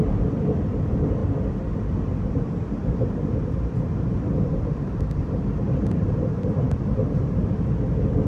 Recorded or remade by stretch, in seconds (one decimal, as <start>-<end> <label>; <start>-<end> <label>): 0.0-2.8 recorded; 2.8-6.8 remade; 6.8-8.3 recorded